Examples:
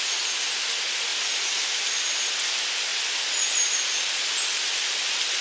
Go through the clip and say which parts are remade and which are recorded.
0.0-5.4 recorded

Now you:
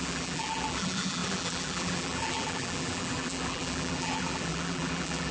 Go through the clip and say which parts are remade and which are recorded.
0.0-5.3 remade

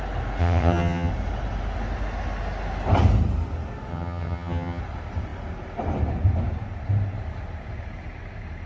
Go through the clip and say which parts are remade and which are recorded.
0.0-0.4 recorded; 0.4-1.1 remade; 1.1-3.9 recorded; 3.9-4.8 remade; 4.8-8.7 recorded

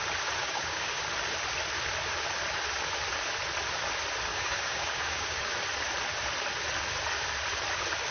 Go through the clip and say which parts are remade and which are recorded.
0.0-0.4 recorded; 0.4-1.0 remade; 1.0-4.3 recorded; 4.3-5.5 remade; 5.5-8.1 recorded

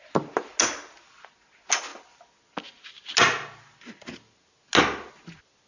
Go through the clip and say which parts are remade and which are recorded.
0.0-5.7 recorded

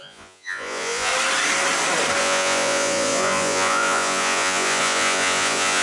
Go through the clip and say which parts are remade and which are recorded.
0.0-1.1 remade; 1.1-2.2 recorded; 2.2-5.8 remade

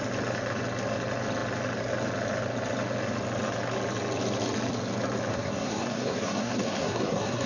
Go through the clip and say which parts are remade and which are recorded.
0.0-5.3 recorded; 5.3-7.5 remade

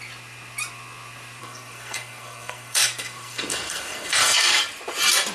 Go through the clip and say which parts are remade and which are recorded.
0.0-1.4 recorded; 1.4-4.6 remade; 4.6-5.3 recorded